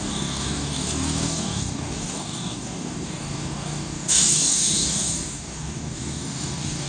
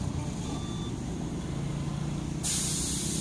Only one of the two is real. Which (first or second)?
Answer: second